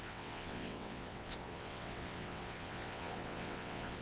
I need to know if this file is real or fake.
fake